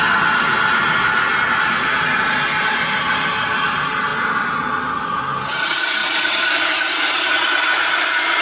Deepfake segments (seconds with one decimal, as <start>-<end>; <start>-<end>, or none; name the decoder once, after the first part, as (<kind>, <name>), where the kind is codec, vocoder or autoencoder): none